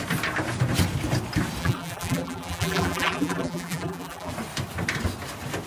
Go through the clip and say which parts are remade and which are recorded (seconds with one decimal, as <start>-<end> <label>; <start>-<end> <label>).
0.0-1.6 recorded; 1.6-4.3 remade; 4.3-5.7 recorded